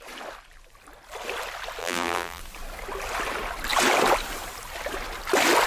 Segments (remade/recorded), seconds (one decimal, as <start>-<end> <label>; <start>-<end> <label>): 0.0-1.8 recorded; 1.8-2.4 remade; 2.4-5.7 recorded